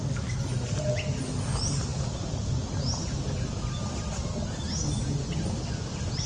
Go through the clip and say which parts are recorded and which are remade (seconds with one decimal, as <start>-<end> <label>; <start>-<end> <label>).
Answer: 0.0-6.3 recorded